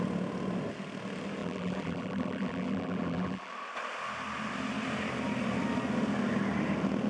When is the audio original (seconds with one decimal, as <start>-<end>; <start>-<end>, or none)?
0.0-1.4; 3.5-7.1